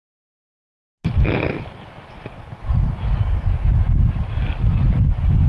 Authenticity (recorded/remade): recorded